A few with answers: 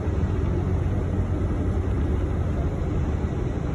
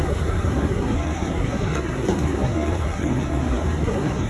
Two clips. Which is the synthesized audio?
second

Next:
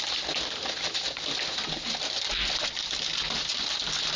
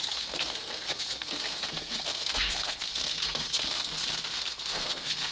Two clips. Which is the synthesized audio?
second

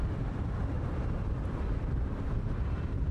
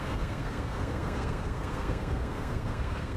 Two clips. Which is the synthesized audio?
second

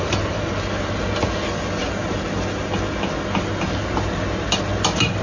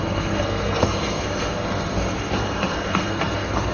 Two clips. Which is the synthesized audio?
second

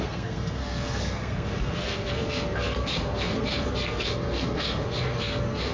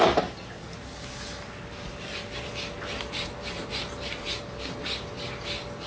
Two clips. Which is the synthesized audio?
first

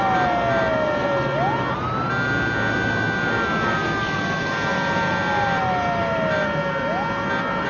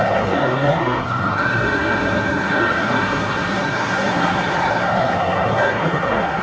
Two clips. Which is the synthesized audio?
second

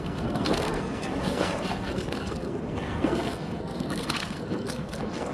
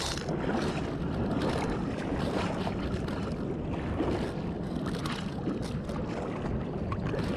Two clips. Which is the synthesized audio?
first